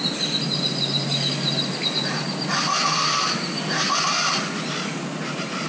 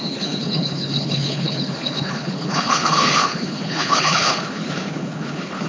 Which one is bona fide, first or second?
first